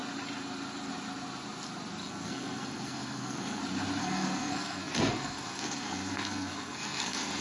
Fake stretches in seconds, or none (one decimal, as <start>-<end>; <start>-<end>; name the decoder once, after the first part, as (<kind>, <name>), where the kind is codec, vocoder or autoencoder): 2.0-3.6 (codec, SNAC); 4.0-7.4